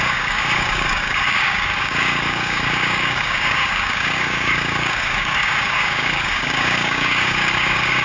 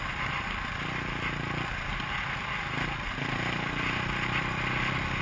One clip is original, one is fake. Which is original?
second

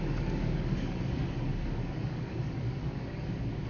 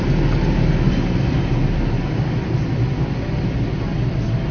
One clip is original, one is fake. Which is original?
second